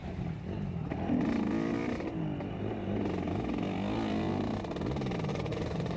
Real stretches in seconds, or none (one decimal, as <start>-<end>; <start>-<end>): 0.0-5.3